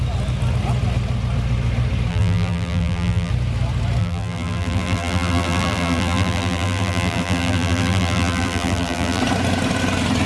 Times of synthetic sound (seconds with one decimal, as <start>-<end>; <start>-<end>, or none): 2.1-3.3; 4.0-9.2